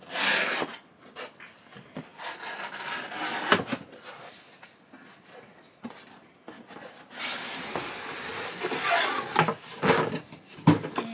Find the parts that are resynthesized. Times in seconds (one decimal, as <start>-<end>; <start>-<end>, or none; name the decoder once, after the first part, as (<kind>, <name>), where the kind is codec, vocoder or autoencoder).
none

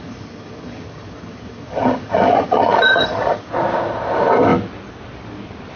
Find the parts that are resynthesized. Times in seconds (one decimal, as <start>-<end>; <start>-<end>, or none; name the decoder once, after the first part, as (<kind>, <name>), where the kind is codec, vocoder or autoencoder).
0.0-3.5 (vocoder, HiFi-GAN)

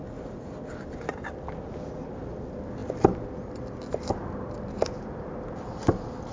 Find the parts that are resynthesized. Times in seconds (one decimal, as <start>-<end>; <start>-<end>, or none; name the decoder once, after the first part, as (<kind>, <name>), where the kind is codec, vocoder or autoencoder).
none

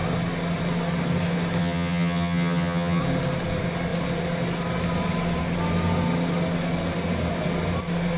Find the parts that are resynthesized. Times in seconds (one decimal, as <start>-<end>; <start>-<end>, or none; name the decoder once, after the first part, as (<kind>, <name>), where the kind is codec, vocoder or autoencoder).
1.6-3.0 (vocoder, HiFi-GAN)

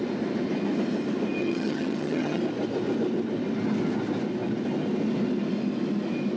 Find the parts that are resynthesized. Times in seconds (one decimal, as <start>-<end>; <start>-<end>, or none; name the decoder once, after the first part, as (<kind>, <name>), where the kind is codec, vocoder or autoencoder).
1.4-2.4 (vocoder, HiFi-GAN)

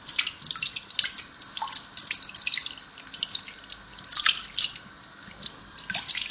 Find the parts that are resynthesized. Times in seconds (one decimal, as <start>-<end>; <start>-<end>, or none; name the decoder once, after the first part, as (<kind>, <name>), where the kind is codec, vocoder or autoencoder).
none

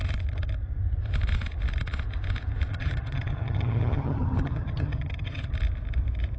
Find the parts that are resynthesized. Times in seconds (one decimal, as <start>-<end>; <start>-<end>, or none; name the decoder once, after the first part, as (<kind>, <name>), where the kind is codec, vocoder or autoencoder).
2.7-5.5 (vocoder, HiFi-GAN)